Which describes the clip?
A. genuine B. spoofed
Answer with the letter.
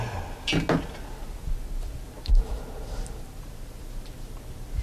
A